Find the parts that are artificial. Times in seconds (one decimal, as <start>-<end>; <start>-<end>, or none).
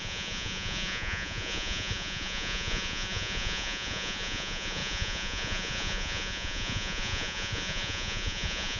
0.0-8.8